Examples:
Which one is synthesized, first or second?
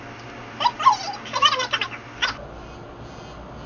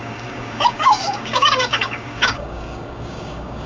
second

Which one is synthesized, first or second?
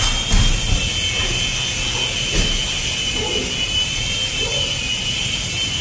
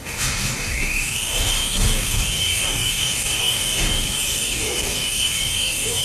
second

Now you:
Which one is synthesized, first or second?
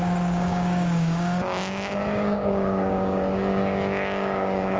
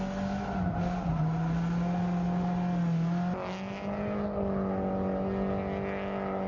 first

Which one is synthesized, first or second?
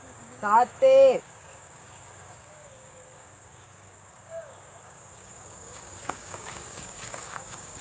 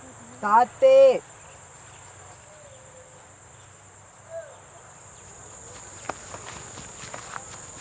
first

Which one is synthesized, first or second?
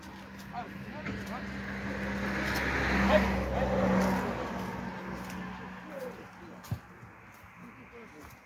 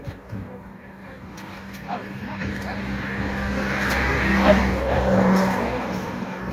second